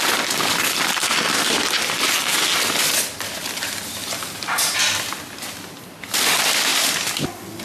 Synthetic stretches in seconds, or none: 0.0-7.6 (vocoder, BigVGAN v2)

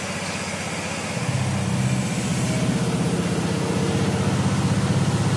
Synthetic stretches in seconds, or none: none

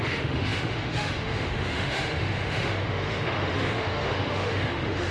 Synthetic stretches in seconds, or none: 0.0-5.1 (autoencoder, DAC-VAE)

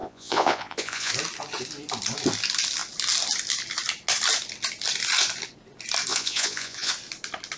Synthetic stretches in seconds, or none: 0.0-1.1 (vocoder, Vocos); 6.1-6.9

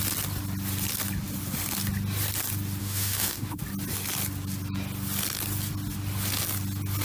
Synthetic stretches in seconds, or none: 2.8-3.6 (autoencoder, DAC-VAE)